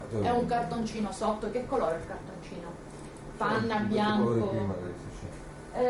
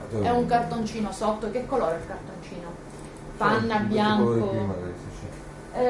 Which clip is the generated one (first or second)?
first